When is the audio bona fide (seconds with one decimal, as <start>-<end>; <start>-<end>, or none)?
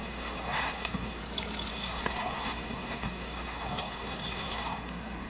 1.2-1.7